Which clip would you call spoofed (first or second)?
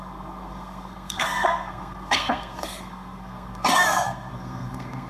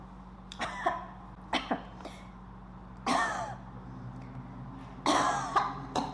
first